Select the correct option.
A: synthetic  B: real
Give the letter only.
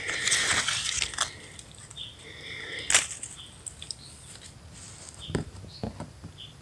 B